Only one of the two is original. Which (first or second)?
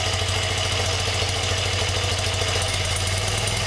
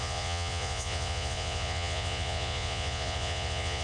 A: first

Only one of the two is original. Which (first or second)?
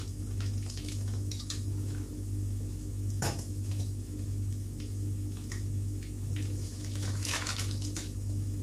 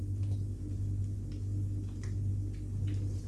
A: second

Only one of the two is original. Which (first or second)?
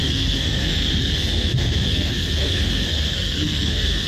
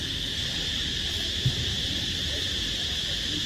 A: second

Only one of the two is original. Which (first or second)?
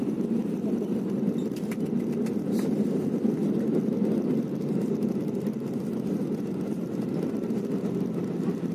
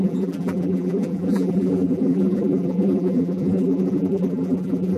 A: first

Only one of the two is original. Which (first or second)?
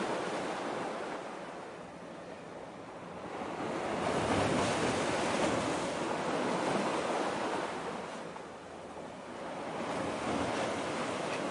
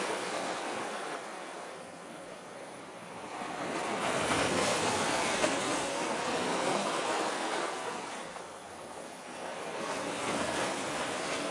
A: first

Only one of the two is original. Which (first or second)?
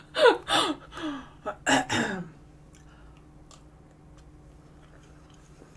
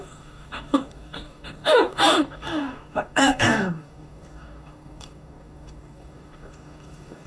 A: first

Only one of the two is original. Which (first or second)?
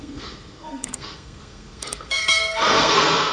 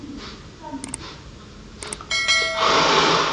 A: second